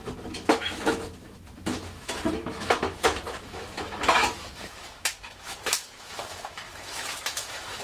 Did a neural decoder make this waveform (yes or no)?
yes